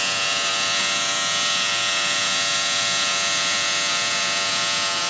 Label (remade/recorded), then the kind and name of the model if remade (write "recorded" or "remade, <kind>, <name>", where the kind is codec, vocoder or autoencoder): remade, vocoder, Vocos